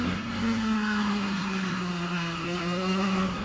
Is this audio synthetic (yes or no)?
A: yes